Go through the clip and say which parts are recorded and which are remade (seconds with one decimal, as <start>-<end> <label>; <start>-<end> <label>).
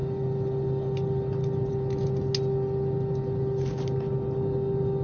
0.0-5.0 recorded